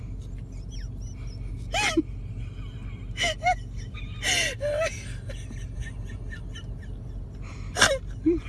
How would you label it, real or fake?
real